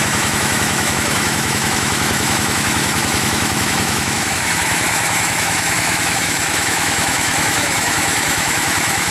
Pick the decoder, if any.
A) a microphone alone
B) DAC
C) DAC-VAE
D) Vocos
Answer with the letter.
C